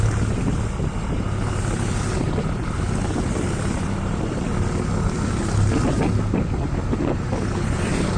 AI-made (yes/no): no